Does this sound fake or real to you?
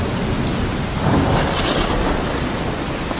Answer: real